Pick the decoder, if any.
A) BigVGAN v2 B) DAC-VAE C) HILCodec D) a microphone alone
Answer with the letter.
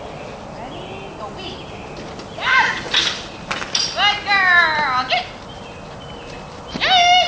D